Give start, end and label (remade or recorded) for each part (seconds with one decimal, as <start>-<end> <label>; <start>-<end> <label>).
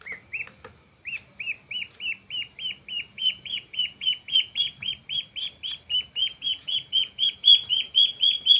0.0-3.1 recorded; 3.1-4.9 remade; 4.9-6.2 recorded; 6.2-8.6 remade